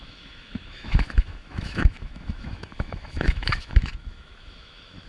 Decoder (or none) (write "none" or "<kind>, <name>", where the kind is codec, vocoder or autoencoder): autoencoder, DAC-VAE